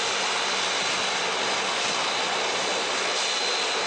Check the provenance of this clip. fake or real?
real